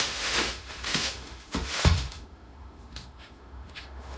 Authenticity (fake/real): fake